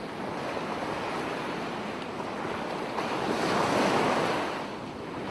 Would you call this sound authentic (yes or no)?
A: yes